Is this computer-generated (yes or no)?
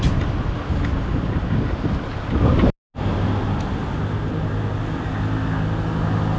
no